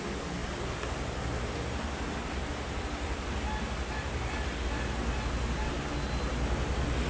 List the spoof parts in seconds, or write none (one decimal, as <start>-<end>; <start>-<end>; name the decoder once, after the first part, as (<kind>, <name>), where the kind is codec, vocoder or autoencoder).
none